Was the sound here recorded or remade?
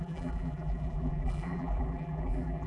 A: remade